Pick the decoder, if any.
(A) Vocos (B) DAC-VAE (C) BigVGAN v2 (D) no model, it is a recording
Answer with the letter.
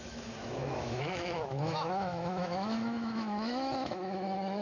B